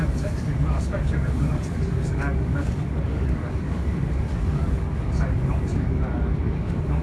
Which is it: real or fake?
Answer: fake